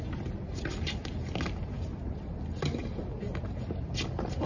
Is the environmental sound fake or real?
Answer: real